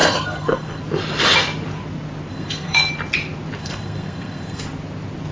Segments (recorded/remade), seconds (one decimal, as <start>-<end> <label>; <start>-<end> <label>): 0.0-0.8 remade; 0.8-2.3 recorded; 2.3-2.9 remade; 2.9-3.6 recorded; 3.6-4.6 remade; 4.6-5.3 recorded